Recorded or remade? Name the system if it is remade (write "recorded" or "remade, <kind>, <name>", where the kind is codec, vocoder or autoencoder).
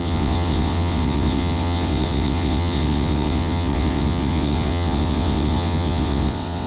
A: remade, vocoder, WaveNeXt